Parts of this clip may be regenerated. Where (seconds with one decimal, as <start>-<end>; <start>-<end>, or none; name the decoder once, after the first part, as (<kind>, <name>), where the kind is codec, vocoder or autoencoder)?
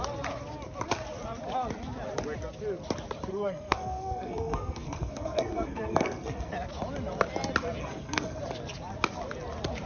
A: 3.3-6.5 (codec, SNAC); 7.8-8.4